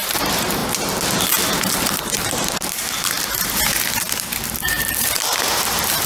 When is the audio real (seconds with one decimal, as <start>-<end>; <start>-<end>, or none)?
0.6-1.2